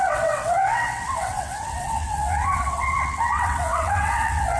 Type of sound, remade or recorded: remade